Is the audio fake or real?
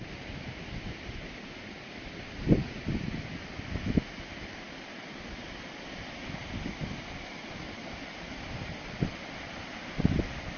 real